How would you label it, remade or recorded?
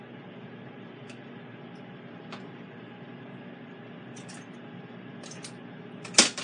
recorded